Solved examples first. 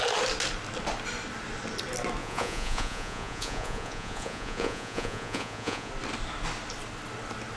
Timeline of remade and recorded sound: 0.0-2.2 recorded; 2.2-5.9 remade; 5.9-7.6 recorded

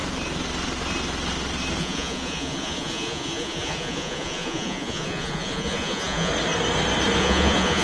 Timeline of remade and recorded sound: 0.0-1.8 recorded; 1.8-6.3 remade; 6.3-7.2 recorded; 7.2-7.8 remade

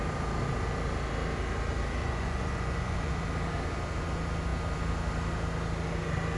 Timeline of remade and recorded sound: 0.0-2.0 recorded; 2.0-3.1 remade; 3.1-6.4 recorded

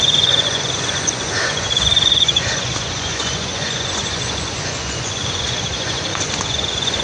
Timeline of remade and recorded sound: 0.0-7.0 remade

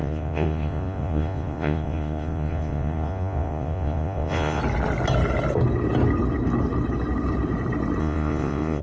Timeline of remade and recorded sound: 0.0-4.6 remade; 4.6-8.0 recorded; 8.0-8.8 remade

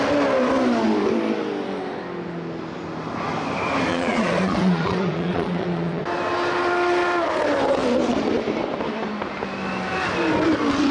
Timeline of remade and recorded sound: 0.0-3.9 recorded; 3.9-6.0 remade; 6.0-10.9 recorded